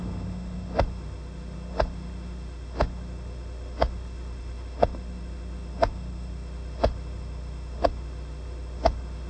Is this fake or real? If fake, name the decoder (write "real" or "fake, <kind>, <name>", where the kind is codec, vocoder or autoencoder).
fake, autoencoder, DAC-VAE